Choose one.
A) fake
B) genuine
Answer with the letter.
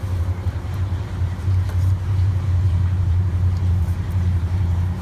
A